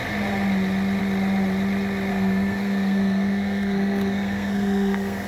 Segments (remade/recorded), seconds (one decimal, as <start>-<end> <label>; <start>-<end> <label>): 0.0-2.1 recorded; 2.1-5.3 remade